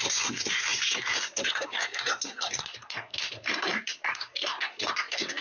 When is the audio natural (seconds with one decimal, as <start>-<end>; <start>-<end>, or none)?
none